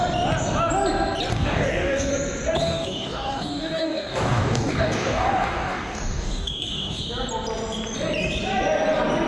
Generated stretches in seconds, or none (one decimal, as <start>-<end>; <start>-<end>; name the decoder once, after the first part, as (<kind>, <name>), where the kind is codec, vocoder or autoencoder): 1.3-2.1 (codec, DAC); 2.6-7.0